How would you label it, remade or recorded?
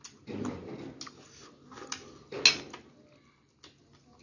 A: recorded